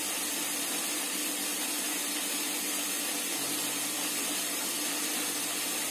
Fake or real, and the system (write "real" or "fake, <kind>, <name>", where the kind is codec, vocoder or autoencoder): real